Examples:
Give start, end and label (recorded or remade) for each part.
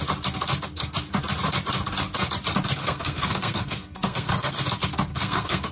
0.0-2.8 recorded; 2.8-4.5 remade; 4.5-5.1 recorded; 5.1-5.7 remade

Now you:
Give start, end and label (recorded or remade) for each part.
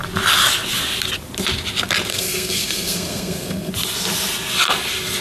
0.0-2.1 recorded; 2.1-3.7 remade; 3.7-5.2 recorded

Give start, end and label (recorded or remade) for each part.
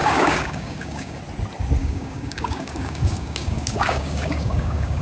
0.0-1.2 remade; 1.2-1.8 recorded; 1.8-5.0 remade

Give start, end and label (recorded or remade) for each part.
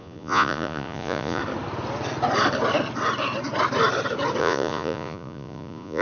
0.0-1.4 remade; 1.4-4.4 recorded; 4.4-6.0 remade